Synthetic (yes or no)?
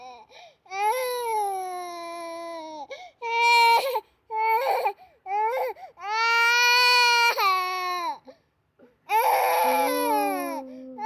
no